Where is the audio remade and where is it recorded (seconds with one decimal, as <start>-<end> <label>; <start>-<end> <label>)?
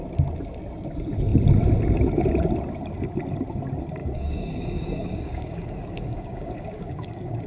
0.0-4.0 recorded; 4.0-7.5 remade